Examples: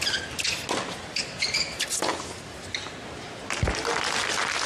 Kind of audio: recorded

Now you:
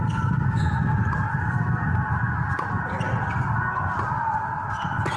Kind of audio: recorded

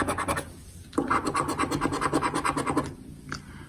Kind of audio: recorded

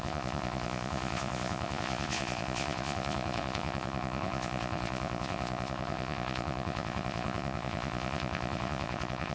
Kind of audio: remade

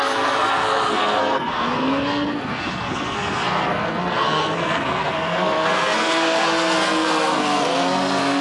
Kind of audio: remade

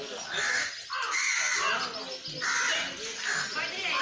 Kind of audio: recorded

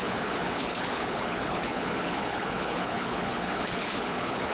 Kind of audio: remade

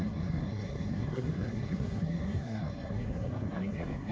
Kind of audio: remade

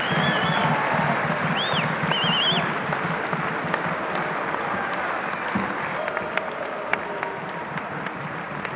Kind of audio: recorded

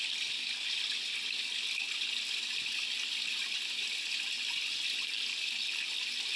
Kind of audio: recorded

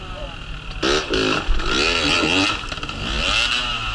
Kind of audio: recorded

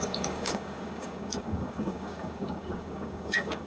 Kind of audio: remade